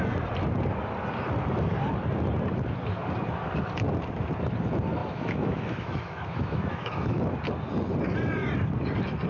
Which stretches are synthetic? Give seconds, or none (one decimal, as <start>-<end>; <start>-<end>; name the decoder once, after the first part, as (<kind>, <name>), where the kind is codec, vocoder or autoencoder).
5.0-7.3 (autoencoder, DAC-VAE)